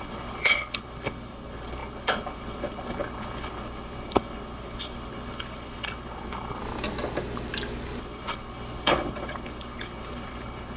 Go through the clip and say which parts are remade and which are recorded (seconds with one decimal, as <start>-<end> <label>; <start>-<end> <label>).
0.0-6.6 remade; 6.6-8.0 recorded; 8.0-10.8 remade